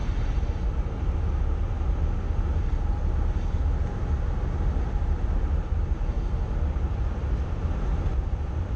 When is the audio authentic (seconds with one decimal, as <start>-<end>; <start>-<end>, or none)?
0.0-8.8